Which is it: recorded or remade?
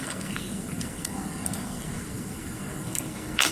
remade